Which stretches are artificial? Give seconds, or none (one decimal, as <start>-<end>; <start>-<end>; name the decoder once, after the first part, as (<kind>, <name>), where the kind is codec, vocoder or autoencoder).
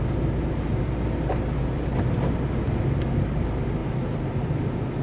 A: none